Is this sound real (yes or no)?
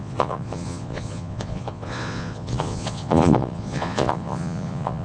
no